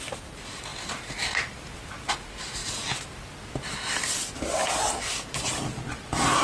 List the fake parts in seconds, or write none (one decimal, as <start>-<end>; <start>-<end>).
none